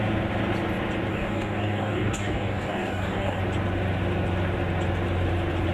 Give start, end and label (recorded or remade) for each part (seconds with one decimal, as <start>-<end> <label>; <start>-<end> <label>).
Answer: 0.0-1.1 recorded; 1.1-3.4 remade; 3.4-5.7 recorded